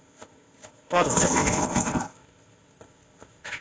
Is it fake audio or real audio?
fake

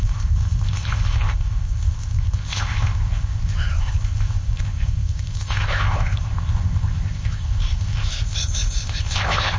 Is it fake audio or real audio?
fake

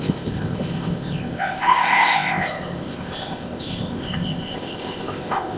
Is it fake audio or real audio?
fake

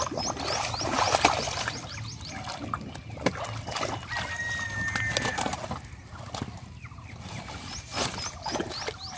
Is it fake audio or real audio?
real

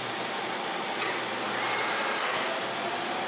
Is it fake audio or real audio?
real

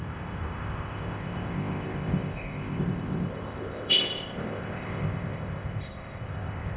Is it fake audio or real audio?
fake